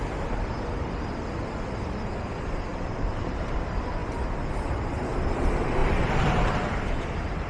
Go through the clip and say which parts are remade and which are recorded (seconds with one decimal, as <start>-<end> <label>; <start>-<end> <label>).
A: 0.0-2.7 recorded; 2.7-3.6 remade; 3.6-5.8 recorded; 5.8-7.5 remade